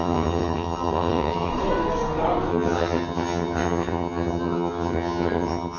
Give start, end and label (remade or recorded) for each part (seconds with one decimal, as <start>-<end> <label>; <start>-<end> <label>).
0.0-1.5 remade; 1.5-2.5 recorded; 2.5-5.8 remade